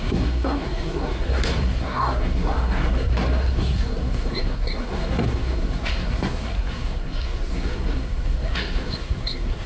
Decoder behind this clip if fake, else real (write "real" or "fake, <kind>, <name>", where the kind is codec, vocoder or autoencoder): fake, codec, SNAC